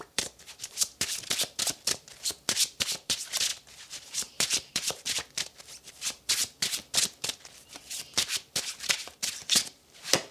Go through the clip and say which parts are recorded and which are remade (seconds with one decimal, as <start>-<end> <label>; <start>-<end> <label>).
0.0-6.4 remade; 6.4-7.3 recorded; 7.3-10.3 remade